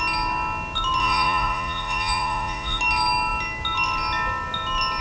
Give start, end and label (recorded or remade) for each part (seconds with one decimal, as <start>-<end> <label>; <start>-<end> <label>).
0.0-1.0 recorded; 1.0-2.8 remade; 2.8-5.0 recorded